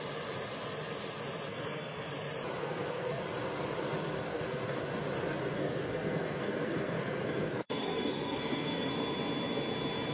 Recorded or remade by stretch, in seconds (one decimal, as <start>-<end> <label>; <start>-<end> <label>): 0.0-1.5 recorded; 1.5-2.1 remade; 2.1-2.6 recorded; 2.6-3.2 remade; 3.2-4.3 recorded; 4.3-4.8 remade; 4.8-5.6 recorded; 5.6-8.9 remade; 8.9-10.1 recorded